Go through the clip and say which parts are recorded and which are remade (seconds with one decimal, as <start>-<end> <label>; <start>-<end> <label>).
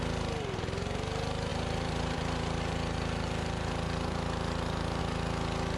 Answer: 0.0-1.5 recorded; 1.5-5.0 remade; 5.0-5.8 recorded